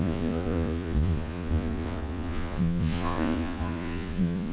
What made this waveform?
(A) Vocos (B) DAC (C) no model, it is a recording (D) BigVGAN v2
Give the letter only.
A